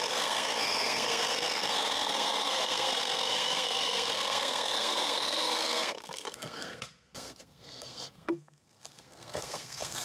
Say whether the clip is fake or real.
fake